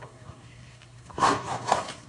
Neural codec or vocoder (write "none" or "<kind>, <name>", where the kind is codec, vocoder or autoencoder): codec, SNAC